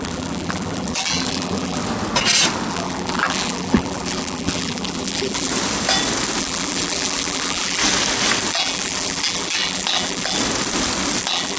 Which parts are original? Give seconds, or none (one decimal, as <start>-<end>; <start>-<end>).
1.8-2.7; 5.5-6.4; 7.8-8.5; 10.4-11.2